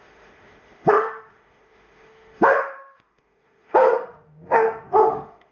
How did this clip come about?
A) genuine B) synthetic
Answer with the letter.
B